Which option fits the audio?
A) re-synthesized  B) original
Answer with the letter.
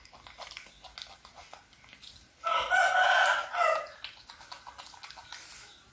B